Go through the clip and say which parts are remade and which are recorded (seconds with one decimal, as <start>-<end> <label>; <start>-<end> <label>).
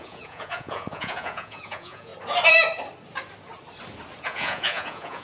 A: 0.0-2.1 remade; 2.1-4.2 recorded; 4.2-5.2 remade